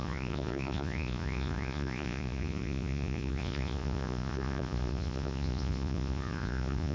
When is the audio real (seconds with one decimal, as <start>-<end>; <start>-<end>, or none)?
none